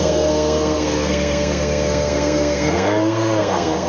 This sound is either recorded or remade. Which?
remade